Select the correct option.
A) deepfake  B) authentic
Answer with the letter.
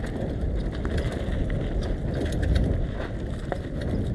B